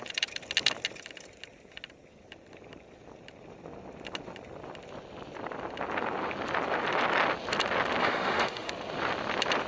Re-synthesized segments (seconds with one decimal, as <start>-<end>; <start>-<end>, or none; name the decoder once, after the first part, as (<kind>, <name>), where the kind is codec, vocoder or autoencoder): 8.0-8.7 (autoencoder, DAC-VAE)